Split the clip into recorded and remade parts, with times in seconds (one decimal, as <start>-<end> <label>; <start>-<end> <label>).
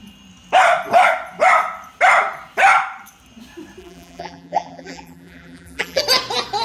0.0-3.8 recorded; 3.8-6.0 remade; 6.0-6.6 recorded